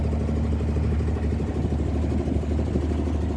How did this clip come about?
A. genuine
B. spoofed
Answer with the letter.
A